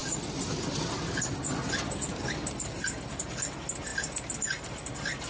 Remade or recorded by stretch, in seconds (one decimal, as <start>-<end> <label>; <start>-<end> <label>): 0.0-5.3 recorded